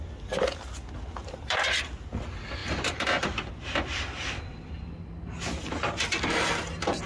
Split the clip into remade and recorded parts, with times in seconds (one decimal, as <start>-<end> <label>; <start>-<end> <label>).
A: 0.0-1.2 recorded; 1.2-1.8 remade; 1.8-7.1 recorded